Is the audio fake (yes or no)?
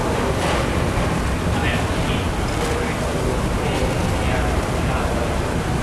no